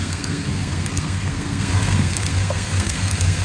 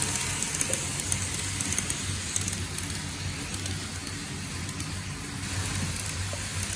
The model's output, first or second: first